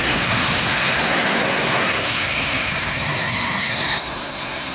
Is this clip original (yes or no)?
no